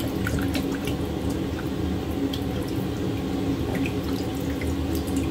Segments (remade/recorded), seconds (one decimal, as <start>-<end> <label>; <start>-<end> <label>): 0.0-5.3 recorded